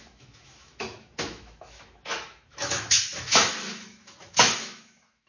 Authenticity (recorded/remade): remade